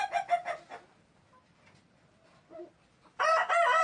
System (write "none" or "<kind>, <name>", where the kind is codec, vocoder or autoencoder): none